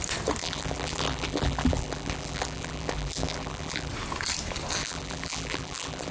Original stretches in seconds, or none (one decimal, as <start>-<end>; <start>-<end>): 0.0-0.4; 3.9-4.8